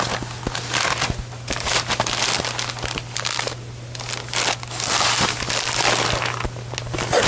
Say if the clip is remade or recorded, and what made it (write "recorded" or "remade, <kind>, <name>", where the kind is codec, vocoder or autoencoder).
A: recorded